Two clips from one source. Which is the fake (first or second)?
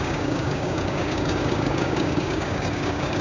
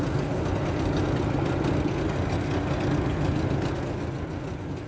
first